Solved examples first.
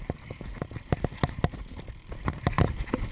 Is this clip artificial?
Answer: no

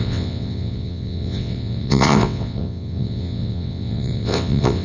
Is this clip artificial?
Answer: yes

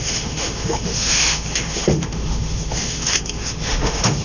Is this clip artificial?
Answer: yes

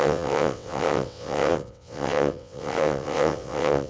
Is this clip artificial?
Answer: yes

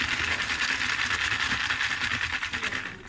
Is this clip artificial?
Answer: no